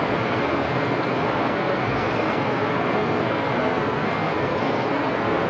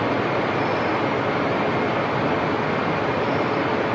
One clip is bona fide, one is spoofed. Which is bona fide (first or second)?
second